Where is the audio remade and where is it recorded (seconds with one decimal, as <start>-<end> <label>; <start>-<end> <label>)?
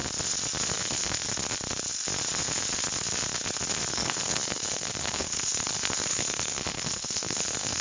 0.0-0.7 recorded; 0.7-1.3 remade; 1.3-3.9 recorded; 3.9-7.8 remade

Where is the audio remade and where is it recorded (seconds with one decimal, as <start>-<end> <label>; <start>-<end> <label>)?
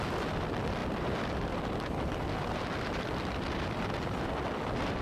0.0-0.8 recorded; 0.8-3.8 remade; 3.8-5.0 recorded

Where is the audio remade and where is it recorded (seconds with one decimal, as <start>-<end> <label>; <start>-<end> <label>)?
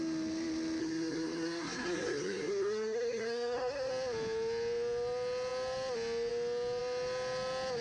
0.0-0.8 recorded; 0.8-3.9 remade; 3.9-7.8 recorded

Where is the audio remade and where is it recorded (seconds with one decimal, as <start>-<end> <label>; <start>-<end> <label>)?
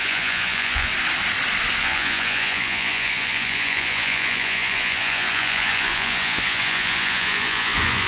0.0-0.9 remade; 0.9-1.8 recorded; 1.8-8.1 remade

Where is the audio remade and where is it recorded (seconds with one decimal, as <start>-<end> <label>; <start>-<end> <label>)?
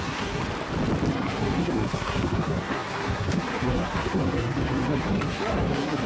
0.0-0.4 remade; 0.4-1.1 recorded; 1.1-6.1 remade